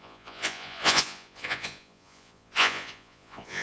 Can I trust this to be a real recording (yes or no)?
no